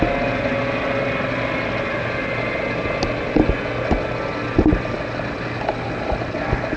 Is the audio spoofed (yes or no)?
no